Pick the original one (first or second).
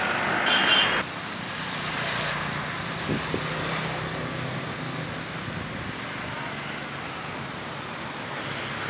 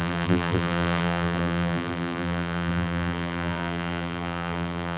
first